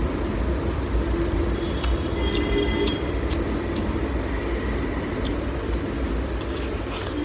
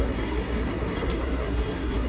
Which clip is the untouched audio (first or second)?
first